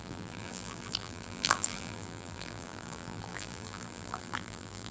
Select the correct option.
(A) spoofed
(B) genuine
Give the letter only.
A